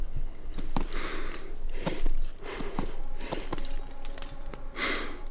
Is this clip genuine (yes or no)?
yes